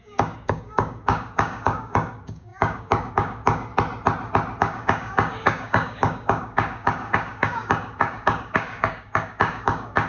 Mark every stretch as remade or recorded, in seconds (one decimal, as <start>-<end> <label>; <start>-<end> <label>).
0.0-3.7 remade; 3.7-4.6 recorded; 4.6-10.1 remade